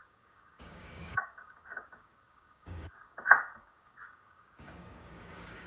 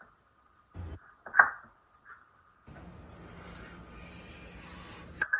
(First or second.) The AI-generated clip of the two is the first